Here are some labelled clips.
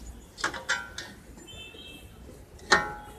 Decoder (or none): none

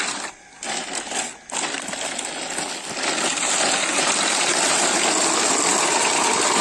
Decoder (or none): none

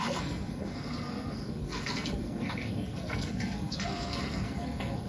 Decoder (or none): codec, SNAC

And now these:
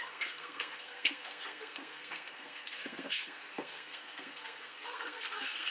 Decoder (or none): codec, SNAC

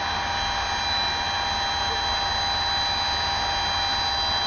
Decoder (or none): none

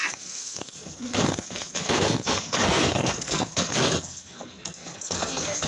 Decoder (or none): codec, SNAC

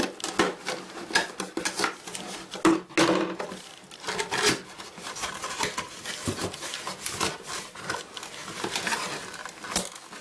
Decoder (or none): none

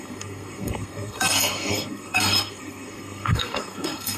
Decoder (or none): codec, SNAC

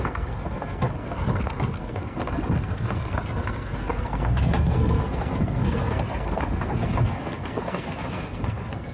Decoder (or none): codec, SNAC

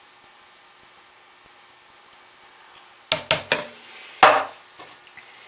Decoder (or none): none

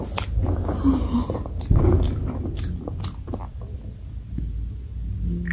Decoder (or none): none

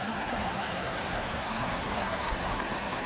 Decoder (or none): codec, SNAC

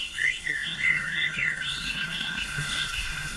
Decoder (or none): codec, SNAC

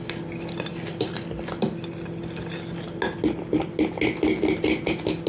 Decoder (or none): none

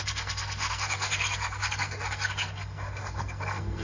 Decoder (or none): codec, SNAC